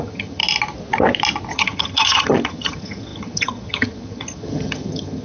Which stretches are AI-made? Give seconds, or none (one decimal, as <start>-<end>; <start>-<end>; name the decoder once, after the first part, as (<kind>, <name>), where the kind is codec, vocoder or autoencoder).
0.0-0.4 (vocoder, HiFi-GAN); 1.5-5.2